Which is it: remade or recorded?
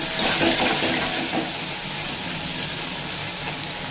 recorded